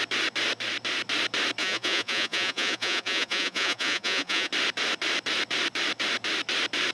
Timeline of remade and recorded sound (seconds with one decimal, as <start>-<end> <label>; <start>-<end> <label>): 0.0-1.6 recorded; 1.6-4.5 remade; 4.5-6.9 recorded